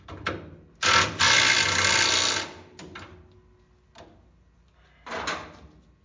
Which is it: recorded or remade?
recorded